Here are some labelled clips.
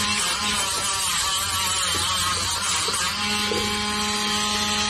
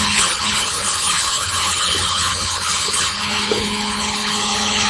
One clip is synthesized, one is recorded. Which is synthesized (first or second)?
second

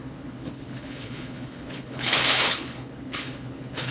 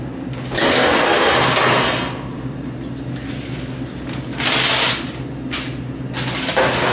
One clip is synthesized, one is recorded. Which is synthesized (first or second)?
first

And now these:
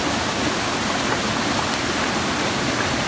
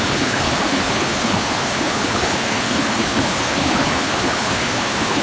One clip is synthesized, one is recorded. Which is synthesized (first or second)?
second